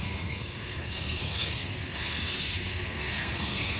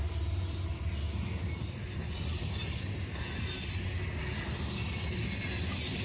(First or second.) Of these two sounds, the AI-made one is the first